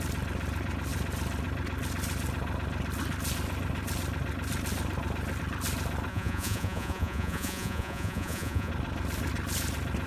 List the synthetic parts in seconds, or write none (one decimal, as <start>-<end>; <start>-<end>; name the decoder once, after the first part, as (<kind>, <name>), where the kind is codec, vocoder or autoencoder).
6.1-8.7 (vocoder, Vocos)